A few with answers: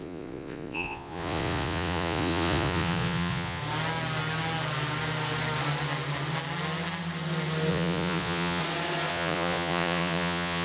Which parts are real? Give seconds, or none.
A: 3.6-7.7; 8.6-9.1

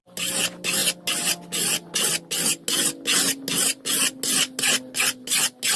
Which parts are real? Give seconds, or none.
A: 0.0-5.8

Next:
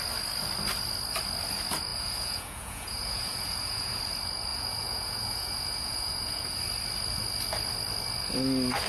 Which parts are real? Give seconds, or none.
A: 0.0-1.9; 4.0-4.5; 6.6-8.9